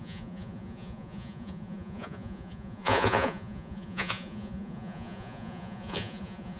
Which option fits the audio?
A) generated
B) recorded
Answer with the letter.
A